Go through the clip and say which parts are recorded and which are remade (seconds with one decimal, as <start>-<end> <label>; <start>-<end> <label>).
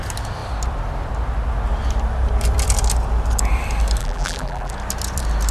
0.0-4.0 recorded; 4.0-4.7 remade; 4.7-5.5 recorded